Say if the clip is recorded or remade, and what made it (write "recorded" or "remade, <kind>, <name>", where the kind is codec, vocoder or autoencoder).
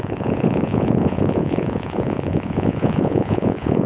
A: remade, vocoder, Vocos